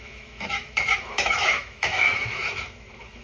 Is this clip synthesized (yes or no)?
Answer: yes